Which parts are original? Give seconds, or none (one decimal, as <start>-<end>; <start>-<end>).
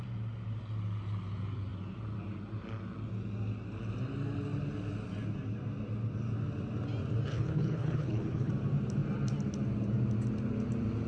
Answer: 0.0-7.3; 8.5-11.1